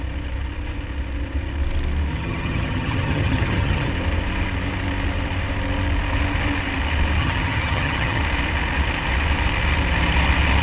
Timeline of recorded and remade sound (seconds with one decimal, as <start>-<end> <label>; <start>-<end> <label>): 0.0-2.1 recorded; 2.1-3.9 remade; 3.9-7.2 recorded; 7.2-8.2 remade; 8.2-10.6 recorded